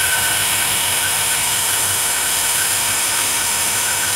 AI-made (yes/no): yes